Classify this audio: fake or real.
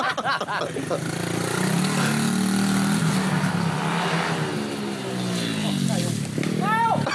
real